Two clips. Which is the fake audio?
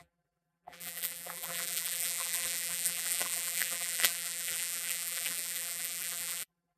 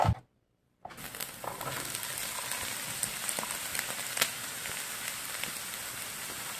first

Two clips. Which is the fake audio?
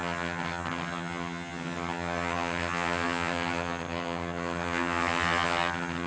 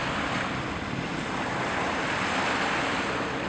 first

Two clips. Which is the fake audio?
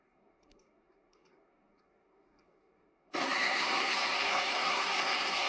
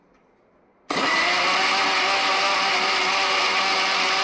first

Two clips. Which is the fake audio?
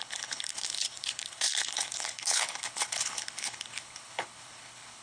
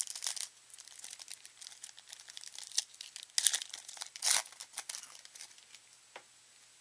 first